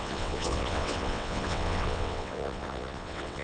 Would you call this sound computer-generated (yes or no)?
yes